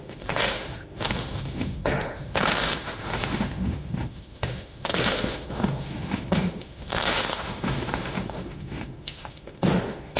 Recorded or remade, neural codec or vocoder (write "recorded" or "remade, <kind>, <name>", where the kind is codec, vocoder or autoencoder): remade, autoencoder, DAC-VAE